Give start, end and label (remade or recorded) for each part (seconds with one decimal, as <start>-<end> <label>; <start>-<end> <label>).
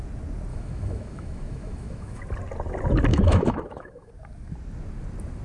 0.0-0.5 recorded; 0.5-2.2 remade; 2.2-3.1 recorded; 3.1-4.1 remade; 4.1-5.4 recorded